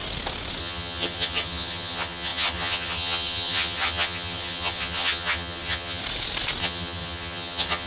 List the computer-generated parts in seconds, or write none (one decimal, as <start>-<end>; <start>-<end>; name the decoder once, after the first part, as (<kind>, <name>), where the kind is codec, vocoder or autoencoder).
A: 0.6-6.0 (vocoder, HiFi-GAN); 6.6-7.9